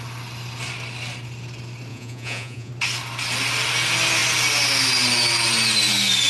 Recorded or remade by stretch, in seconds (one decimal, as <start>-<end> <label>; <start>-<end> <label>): 0.0-1.9 recorded; 1.9-2.7 remade; 2.7-6.3 recorded